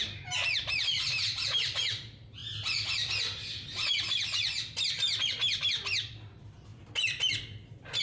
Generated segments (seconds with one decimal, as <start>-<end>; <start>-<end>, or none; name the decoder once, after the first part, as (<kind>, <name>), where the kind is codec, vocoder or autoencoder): none